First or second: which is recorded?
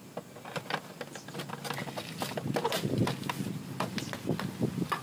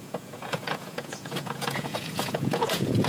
first